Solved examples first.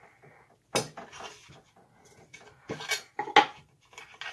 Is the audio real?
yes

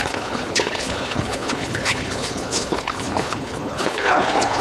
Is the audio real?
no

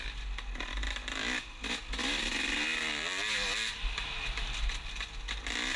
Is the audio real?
yes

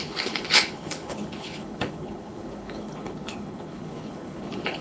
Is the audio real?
no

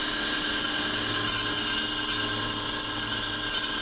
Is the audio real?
yes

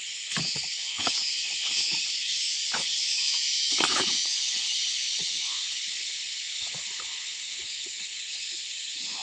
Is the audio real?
no